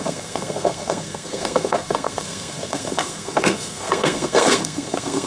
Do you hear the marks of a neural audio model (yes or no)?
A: yes